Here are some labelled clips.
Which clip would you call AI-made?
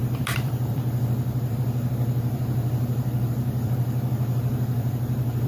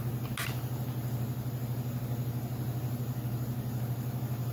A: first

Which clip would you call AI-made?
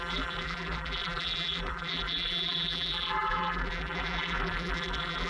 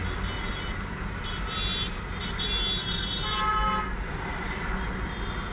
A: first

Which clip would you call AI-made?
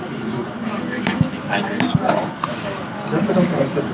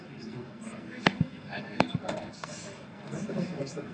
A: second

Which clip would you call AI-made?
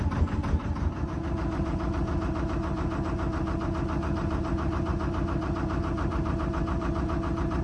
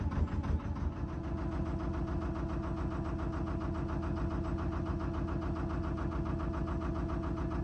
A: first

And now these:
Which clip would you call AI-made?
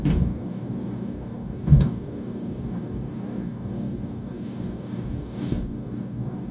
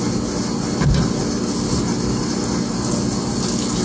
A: first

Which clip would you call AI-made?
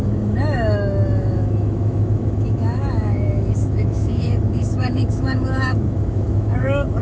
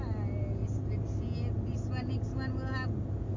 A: first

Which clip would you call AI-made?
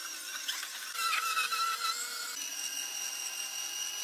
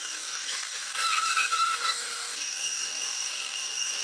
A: second